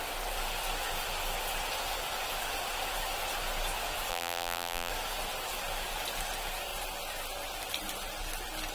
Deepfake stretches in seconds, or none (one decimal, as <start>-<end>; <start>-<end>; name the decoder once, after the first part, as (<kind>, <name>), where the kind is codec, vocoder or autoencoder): 4.1-4.9 (vocoder, BigVGAN v2)